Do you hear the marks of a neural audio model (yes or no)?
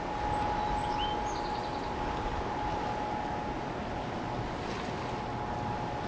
no